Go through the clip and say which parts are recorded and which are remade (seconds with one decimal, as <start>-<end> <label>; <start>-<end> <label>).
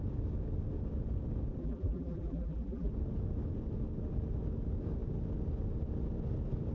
0.0-1.6 recorded; 1.6-2.9 remade; 2.9-6.7 recorded